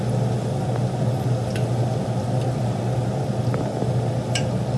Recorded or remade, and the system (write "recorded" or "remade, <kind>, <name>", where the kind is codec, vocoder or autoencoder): recorded